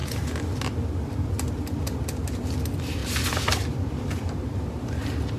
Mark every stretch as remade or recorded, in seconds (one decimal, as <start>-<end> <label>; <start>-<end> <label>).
0.0-5.4 recorded